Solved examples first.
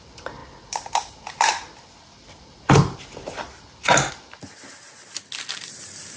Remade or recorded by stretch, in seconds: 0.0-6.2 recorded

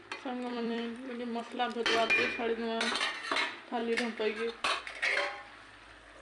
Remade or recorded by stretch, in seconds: 0.0-0.5 recorded; 0.5-1.4 remade; 1.4-3.8 recorded; 3.8-4.8 remade; 4.8-6.2 recorded

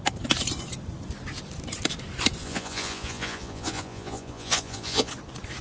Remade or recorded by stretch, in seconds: 0.0-2.4 recorded; 2.4-5.1 remade; 5.1-5.6 recorded

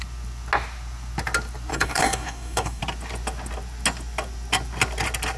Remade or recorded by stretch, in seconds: 0.0-1.7 recorded; 1.7-2.8 remade; 2.8-5.4 recorded